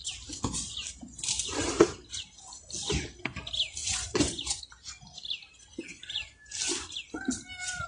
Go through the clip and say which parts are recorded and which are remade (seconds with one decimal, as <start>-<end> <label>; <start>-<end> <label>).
0.0-3.8 recorded; 3.8-4.6 remade; 4.6-5.9 recorded; 5.9-6.5 remade; 6.5-7.9 recorded